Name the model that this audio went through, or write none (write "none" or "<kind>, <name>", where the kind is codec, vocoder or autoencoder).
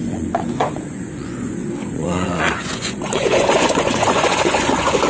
vocoder, Vocos